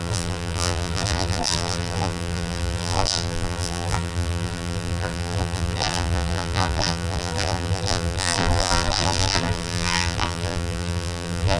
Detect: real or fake fake